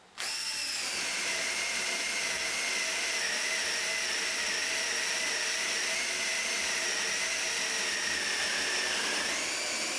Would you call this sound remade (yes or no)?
no